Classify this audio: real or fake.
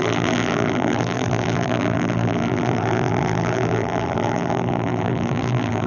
fake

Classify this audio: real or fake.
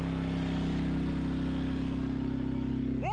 real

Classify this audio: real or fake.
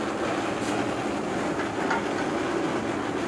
real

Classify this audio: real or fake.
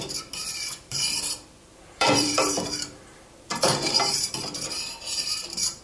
fake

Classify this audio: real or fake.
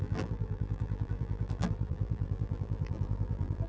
fake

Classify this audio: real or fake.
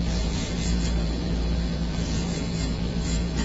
fake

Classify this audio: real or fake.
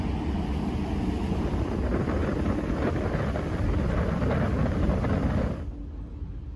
real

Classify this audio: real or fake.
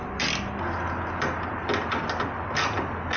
real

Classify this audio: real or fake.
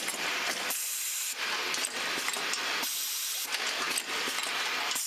real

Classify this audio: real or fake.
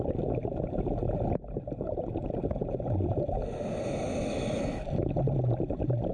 real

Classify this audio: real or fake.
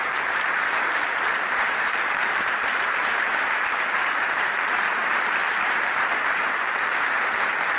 fake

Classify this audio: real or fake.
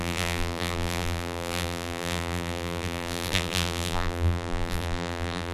fake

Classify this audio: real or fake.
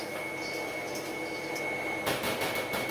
real